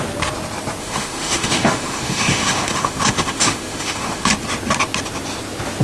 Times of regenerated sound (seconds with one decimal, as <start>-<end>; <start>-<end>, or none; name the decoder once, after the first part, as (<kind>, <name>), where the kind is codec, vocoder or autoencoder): 0.8-4.3 (autoencoder, DAC-VAE)